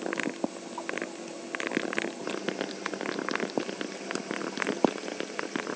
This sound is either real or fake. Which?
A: real